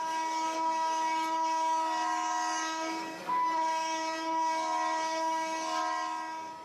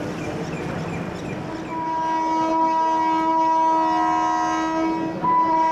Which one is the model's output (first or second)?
first